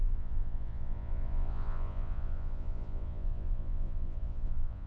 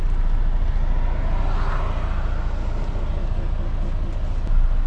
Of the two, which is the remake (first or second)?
first